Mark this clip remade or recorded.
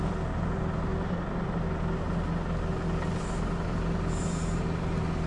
recorded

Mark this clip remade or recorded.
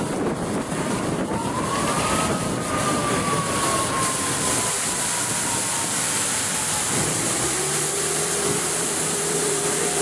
remade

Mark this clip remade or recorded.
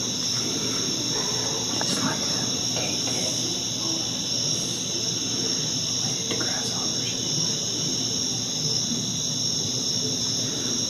recorded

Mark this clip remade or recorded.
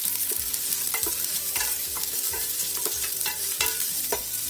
remade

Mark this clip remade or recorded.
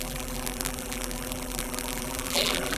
remade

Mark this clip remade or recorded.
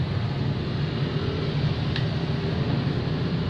recorded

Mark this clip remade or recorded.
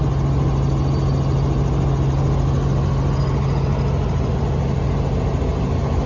recorded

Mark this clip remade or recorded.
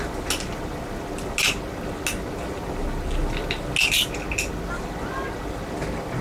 recorded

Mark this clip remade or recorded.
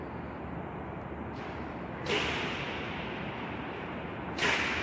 recorded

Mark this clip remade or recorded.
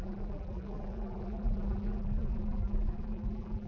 remade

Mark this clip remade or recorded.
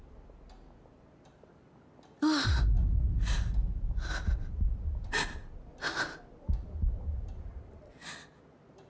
recorded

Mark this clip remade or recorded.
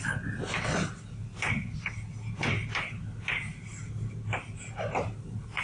recorded